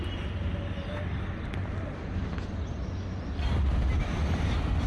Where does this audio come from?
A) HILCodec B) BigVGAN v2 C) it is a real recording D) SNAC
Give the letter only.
C